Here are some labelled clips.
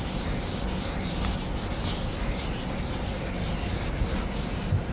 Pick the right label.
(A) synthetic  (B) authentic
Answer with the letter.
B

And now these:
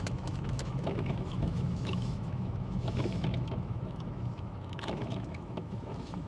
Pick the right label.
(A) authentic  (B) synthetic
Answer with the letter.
B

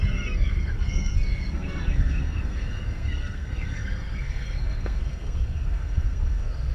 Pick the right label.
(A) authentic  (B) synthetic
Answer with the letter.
B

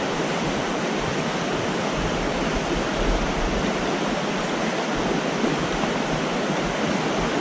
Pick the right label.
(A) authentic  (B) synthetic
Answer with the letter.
A